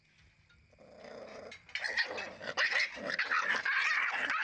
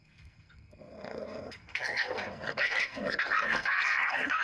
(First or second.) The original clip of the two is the first